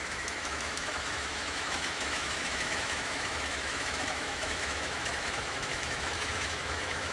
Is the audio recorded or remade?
remade